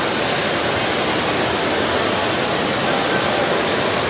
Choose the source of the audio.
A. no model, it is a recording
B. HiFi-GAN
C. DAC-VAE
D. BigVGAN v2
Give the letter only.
A